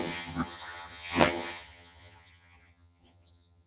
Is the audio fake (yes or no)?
yes